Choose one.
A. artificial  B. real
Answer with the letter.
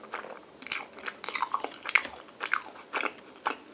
B